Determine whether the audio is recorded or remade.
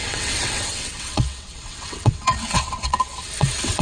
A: remade